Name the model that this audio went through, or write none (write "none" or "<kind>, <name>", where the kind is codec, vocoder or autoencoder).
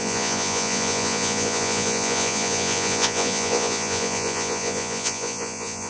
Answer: vocoder, Vocos